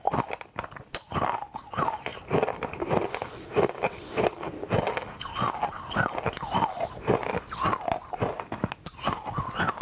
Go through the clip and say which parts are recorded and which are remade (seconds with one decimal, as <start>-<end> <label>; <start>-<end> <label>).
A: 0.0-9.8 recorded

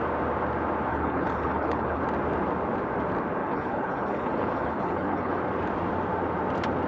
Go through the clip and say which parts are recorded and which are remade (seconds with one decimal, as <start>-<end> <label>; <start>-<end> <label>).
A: 0.0-0.9 recorded; 0.9-2.0 remade; 2.0-3.4 recorded; 3.4-5.4 remade; 5.4-6.9 recorded

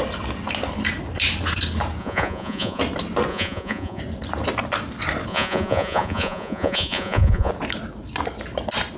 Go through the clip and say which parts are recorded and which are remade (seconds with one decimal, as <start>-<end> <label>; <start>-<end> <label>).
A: 0.0-2.0 recorded; 2.0-2.8 remade; 2.8-3.3 recorded; 3.3-4.0 remade; 4.0-5.3 recorded; 5.3-7.5 remade; 7.5-9.0 recorded

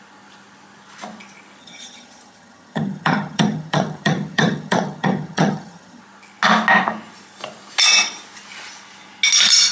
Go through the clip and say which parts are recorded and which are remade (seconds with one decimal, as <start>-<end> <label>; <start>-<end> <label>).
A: 0.0-1.6 recorded; 1.6-6.0 remade; 6.0-9.7 recorded

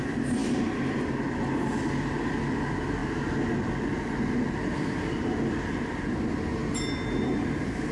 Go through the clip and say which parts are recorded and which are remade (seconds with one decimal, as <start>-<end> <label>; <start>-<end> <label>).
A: 0.0-6.6 recorded; 6.6-7.3 remade; 7.3-7.9 recorded